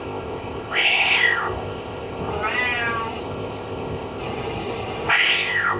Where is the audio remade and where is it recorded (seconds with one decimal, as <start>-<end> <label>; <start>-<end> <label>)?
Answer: 0.0-2.3 remade; 2.3-3.2 recorded; 3.2-4.2 remade; 4.2-5.1 recorded; 5.1-5.8 remade